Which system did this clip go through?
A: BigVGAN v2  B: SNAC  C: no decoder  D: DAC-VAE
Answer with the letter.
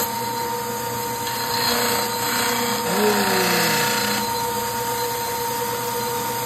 C